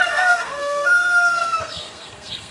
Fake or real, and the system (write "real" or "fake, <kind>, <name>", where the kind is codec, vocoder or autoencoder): fake, codec, SNAC